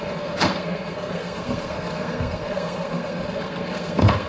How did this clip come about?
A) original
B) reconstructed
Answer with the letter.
B